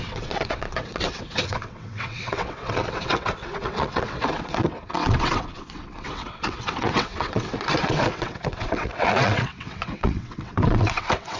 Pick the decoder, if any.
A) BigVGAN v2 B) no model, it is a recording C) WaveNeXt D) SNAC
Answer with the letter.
C